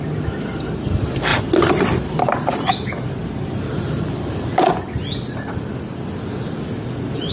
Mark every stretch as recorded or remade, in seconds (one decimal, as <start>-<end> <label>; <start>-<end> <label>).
0.0-1.3 recorded; 1.3-4.7 remade; 4.7-7.3 recorded

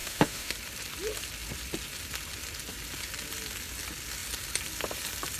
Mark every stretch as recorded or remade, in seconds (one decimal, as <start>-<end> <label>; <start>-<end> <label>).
0.0-0.5 remade; 0.5-5.4 recorded